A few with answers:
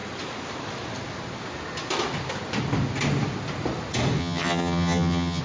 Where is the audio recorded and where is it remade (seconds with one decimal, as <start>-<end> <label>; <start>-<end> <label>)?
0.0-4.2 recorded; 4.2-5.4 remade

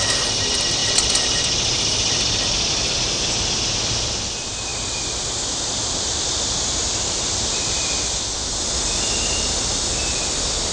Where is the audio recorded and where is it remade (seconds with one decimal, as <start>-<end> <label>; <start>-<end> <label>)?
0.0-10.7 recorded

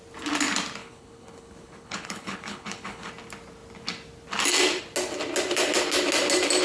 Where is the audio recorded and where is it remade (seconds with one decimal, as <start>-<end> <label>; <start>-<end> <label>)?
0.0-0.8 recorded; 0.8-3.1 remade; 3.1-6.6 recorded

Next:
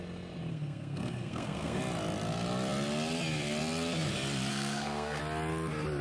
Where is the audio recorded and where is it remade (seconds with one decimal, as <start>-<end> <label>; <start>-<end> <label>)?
0.0-0.5 recorded; 0.5-1.8 remade; 1.8-4.5 recorded; 4.5-5.2 remade; 5.2-6.0 recorded